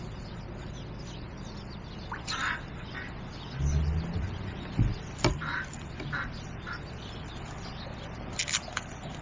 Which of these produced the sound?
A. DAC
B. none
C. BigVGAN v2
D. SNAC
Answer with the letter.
B